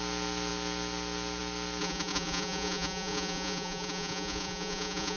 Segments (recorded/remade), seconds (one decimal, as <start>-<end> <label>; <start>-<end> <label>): 0.0-1.8 recorded; 1.8-5.2 remade